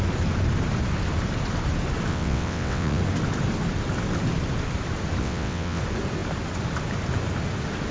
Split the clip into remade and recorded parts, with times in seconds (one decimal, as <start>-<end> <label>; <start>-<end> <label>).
0.0-2.1 recorded; 2.1-3.0 remade; 3.0-5.2 recorded; 5.2-5.8 remade; 5.8-7.9 recorded